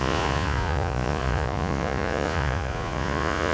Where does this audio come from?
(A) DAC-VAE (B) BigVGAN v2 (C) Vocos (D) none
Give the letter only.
C